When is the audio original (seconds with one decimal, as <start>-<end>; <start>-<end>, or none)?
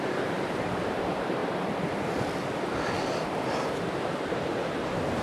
1.4-3.2